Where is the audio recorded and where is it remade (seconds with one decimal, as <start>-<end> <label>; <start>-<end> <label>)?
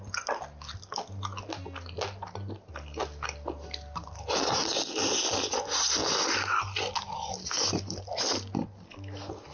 0.0-9.5 recorded